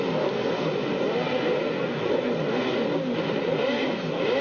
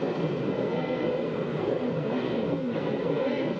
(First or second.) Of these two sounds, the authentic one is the first